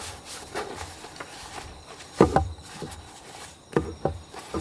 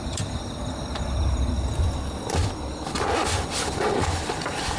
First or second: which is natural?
first